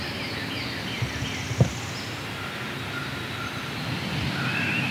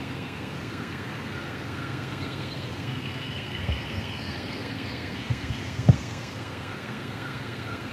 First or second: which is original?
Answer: first